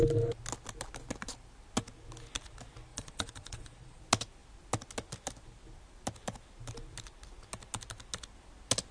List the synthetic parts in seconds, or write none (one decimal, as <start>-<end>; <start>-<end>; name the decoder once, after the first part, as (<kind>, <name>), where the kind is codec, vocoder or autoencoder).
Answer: 2.9-4.0 (vocoder, Vocos)